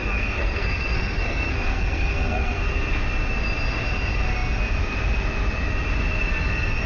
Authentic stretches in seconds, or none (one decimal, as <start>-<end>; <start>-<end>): 2.7-6.9